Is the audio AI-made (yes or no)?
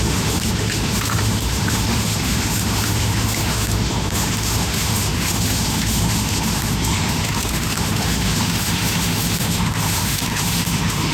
yes